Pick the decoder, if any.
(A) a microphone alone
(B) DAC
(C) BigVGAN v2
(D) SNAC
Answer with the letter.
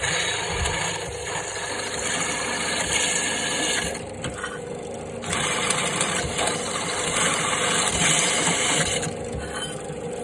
A